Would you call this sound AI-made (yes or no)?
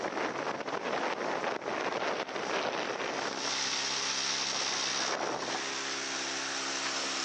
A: no